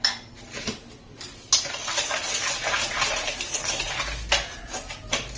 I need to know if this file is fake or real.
real